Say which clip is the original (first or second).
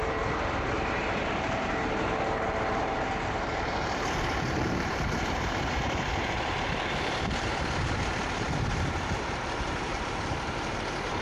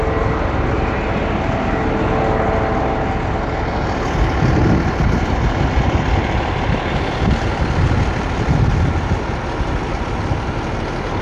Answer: second